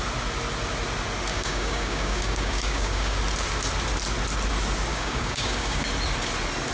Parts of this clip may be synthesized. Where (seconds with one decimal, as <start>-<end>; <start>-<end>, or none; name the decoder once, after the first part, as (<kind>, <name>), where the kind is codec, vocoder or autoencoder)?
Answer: 1.3-3.2 (codec, DAC); 4.9-5.9